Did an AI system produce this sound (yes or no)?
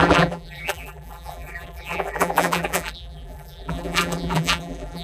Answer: yes